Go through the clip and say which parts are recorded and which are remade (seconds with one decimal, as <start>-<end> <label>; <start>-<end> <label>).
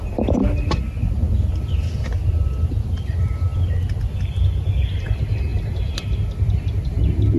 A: 0.0-7.4 recorded